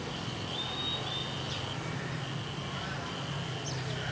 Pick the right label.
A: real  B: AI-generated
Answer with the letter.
A